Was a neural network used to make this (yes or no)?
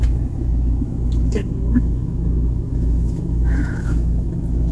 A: yes